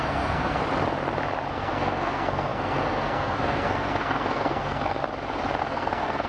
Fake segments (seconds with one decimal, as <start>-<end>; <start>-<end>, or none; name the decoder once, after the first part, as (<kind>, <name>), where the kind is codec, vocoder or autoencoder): 0.0-0.6 (codec, SNAC); 1.5-5.0; 5.6-6.3